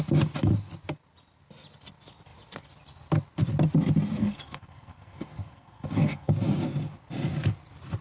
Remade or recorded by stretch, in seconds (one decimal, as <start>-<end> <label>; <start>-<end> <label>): 0.0-4.2 recorded; 4.2-6.3 remade; 6.3-8.0 recorded